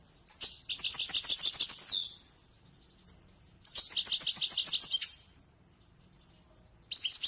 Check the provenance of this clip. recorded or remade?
recorded